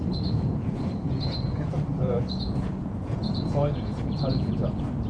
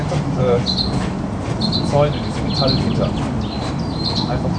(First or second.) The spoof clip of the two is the first